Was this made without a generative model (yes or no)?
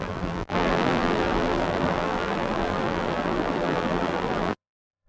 no